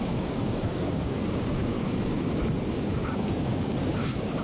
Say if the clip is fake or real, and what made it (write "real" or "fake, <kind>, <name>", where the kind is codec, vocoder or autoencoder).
fake, codec, DAC